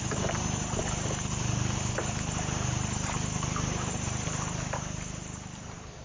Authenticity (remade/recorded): remade